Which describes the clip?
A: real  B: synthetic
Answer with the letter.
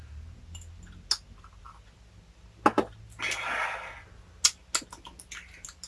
A